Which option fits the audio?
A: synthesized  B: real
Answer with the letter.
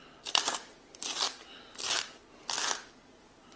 B